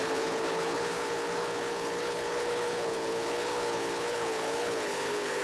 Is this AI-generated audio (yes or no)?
yes